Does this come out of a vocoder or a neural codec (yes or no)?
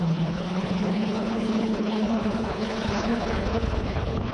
yes